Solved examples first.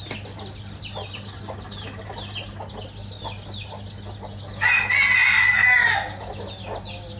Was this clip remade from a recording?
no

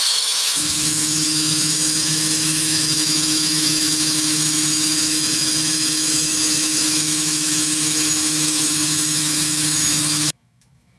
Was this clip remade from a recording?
yes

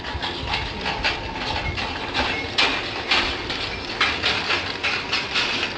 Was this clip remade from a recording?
no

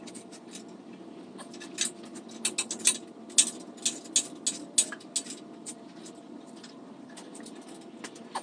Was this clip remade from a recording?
no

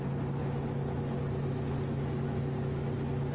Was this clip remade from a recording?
no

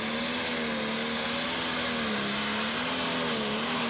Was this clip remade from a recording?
no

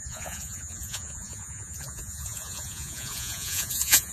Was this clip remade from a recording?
yes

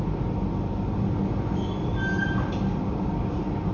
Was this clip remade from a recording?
no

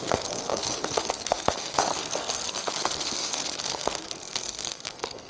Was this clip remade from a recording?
yes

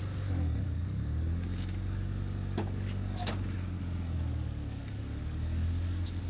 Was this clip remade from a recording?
yes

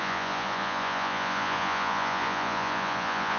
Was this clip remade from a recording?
yes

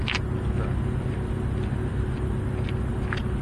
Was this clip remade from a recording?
no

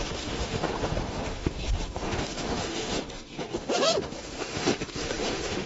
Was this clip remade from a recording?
yes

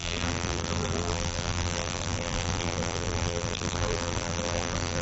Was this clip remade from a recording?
yes